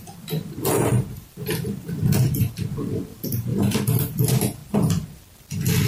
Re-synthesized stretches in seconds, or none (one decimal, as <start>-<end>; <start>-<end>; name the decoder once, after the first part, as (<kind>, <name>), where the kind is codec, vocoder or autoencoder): 0.9-2.3 (vocoder, BigVGAN v2)